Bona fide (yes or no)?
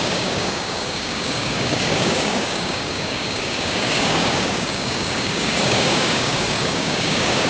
no